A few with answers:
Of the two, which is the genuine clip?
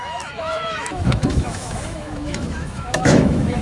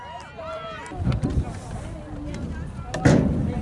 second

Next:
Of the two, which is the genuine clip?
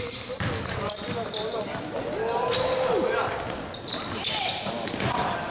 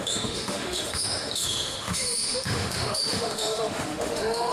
first